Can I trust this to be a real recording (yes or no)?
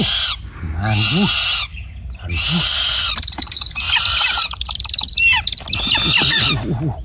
yes